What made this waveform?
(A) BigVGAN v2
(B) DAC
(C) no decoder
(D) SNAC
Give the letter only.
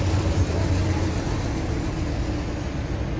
C